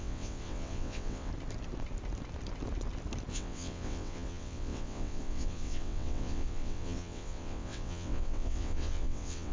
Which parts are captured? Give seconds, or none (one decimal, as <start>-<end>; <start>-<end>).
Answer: 1.3-3.3